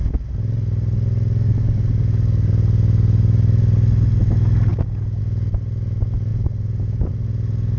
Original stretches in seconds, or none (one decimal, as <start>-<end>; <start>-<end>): 0.0-4.7; 5.2-6.3; 7.1-7.8